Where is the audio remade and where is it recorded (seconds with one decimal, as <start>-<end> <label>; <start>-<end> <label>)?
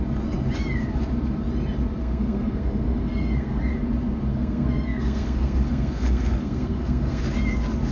0.0-2.0 recorded; 2.0-3.6 remade; 3.6-4.3 recorded; 4.3-7.2 remade; 7.2-7.9 recorded